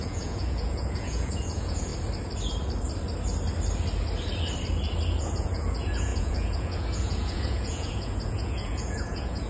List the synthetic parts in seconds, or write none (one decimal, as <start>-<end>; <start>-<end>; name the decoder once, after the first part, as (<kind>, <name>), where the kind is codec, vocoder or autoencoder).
0.0-1.9 (vocoder, Vocos); 5.2-9.5